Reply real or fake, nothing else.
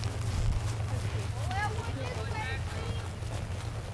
real